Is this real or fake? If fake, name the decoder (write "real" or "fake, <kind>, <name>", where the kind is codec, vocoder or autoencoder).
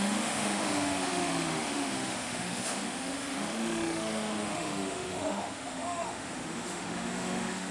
fake, autoencoder, DAC-VAE